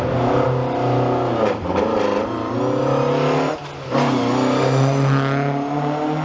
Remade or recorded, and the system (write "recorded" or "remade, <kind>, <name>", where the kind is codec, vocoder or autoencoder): recorded